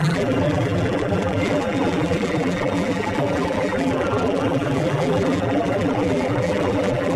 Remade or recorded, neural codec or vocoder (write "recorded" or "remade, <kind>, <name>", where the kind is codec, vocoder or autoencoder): remade, vocoder, BigVGAN v2